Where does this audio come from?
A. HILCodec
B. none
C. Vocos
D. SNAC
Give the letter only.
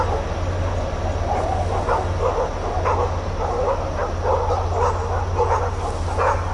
B